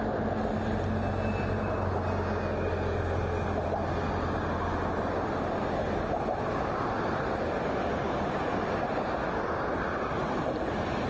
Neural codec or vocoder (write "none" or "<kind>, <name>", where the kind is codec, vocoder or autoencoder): none